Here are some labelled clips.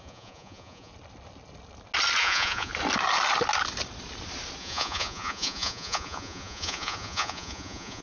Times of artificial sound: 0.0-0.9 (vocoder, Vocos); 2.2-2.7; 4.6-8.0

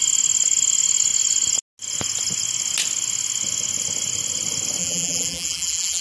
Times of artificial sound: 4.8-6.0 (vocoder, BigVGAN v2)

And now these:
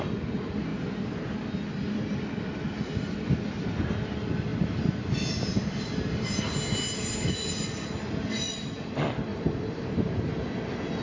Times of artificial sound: 0.7-1.5 (vocoder, BigVGAN v2); 9.3-10.3

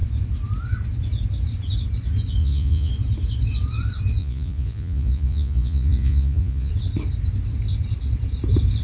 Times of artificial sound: 2.4-2.9 (vocoder, Vocos); 4.2-6.7